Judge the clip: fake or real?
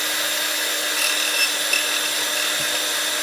real